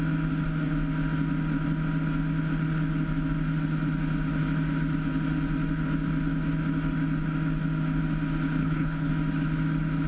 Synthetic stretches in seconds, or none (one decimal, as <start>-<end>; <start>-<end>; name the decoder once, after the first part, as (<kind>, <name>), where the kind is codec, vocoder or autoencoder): 8.6-9.1 (codec, HILCodec)